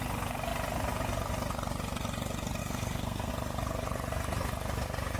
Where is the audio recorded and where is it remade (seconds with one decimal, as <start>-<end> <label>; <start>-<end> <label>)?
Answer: 0.0-2.6 recorded; 2.6-3.3 remade; 3.3-5.2 recorded